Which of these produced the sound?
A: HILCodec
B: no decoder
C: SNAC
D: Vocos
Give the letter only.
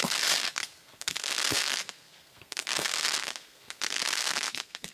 C